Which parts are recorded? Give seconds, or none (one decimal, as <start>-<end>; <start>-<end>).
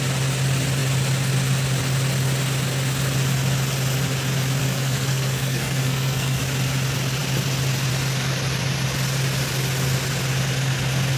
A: 0.0-4.6; 6.4-11.2